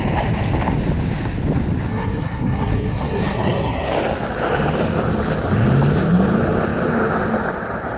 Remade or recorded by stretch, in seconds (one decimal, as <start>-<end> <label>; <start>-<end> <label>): 0.0-1.9 recorded; 1.9-3.9 remade; 3.9-8.0 recorded